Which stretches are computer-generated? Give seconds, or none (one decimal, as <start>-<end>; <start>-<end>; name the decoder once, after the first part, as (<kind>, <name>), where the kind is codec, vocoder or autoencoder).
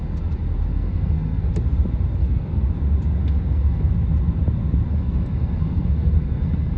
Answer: 0.7-1.5 (codec, SNAC); 2.2-2.7; 3.2-3.9; 4.9-6.8